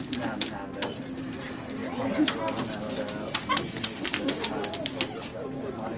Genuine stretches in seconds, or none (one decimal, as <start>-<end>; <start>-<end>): 1.8-4.2; 5.3-6.0